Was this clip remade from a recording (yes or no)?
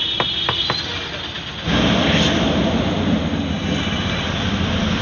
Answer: no